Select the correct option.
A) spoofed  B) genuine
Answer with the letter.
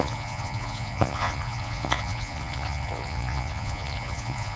A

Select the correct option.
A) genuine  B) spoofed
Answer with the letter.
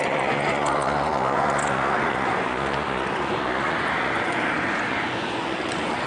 B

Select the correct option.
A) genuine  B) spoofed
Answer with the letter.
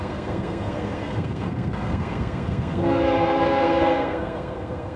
B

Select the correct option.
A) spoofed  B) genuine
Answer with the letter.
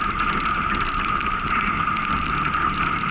A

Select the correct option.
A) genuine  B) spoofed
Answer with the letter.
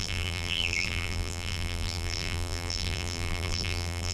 B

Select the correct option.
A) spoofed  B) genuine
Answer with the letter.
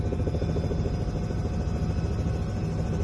B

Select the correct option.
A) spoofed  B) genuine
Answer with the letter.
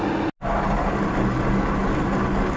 B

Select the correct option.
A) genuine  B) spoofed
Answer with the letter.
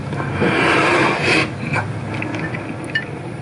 A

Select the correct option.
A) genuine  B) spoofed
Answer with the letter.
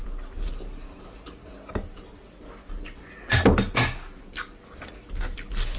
A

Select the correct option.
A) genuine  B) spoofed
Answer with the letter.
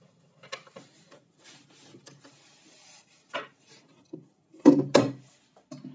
A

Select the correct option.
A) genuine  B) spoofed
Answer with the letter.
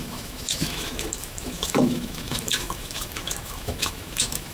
B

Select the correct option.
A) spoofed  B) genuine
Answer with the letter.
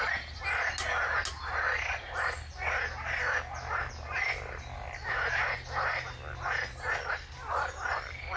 B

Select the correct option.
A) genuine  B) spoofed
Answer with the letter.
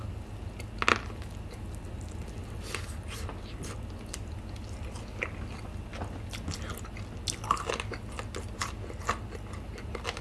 A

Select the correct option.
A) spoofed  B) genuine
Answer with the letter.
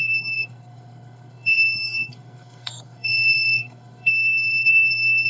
A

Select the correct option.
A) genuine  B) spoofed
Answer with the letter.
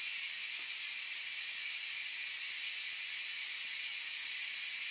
A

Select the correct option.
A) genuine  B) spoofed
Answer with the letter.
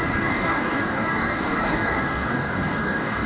B